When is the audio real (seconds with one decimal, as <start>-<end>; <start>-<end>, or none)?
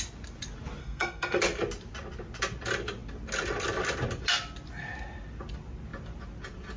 0.0-0.8; 1.4-6.8